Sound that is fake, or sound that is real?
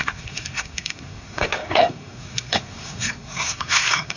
fake